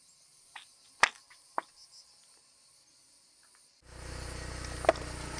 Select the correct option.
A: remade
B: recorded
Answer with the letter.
B